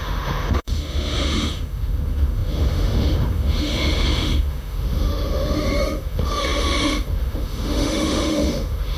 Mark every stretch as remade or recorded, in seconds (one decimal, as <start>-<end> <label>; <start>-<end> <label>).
0.0-9.0 remade